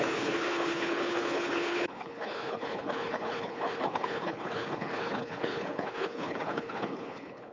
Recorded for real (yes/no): no